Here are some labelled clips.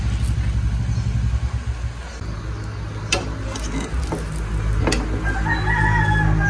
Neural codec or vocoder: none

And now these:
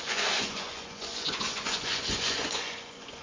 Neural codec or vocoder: vocoder, Vocos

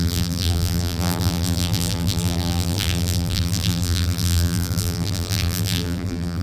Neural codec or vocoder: vocoder, BigVGAN v2